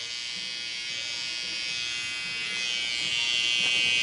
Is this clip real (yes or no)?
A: yes